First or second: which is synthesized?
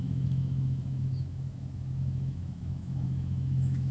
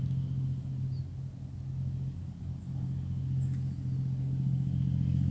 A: first